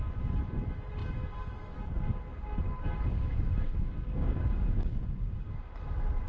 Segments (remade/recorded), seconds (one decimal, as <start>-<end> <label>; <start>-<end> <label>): 0.0-3.1 recorded; 3.1-5.5 remade; 5.5-6.3 recorded